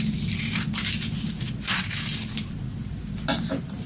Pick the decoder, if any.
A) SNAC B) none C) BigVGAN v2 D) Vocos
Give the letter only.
B